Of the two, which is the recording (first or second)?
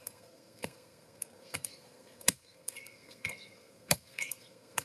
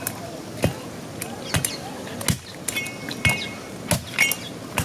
second